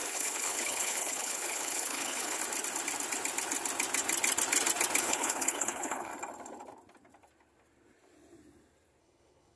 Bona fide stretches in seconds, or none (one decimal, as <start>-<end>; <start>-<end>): 2.4-5.0; 6.1-9.0